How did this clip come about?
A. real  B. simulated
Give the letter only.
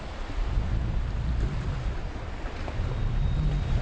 A